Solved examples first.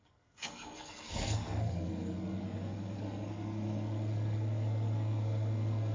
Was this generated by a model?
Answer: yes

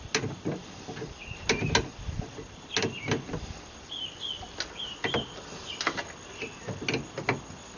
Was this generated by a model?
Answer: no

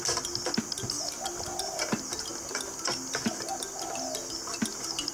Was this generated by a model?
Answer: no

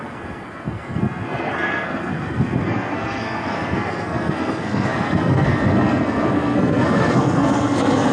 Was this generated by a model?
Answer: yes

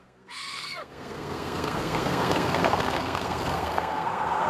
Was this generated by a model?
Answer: yes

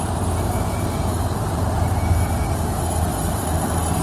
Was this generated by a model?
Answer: no